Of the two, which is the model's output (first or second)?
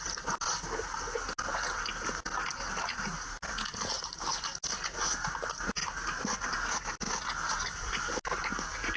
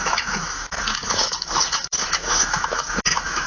second